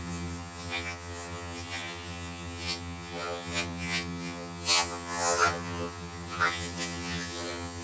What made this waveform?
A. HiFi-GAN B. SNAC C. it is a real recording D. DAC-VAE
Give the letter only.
A